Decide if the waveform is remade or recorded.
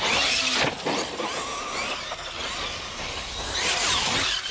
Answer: recorded